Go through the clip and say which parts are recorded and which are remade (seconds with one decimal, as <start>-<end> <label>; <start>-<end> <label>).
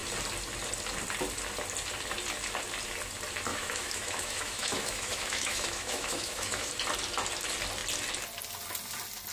0.0-3.5 recorded; 3.5-6.7 remade; 6.7-9.3 recorded